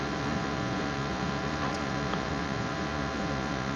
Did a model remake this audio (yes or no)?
yes